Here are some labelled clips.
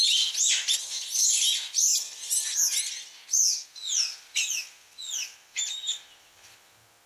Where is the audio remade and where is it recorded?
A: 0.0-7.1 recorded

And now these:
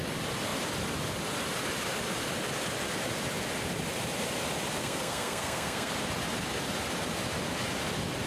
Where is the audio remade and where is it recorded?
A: 0.0-4.8 recorded; 4.8-5.9 remade; 5.9-8.3 recorded

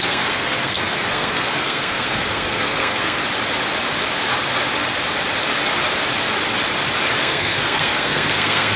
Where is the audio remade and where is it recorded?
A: 0.0-3.2 remade; 3.2-7.2 recorded; 7.2-8.8 remade